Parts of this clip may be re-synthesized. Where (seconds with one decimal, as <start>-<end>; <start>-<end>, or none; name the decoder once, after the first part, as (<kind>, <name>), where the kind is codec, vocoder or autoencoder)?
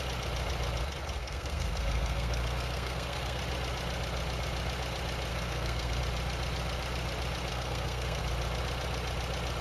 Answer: 1.2-3.4 (codec, SNAC); 5.3-6.0; 7.5-8.2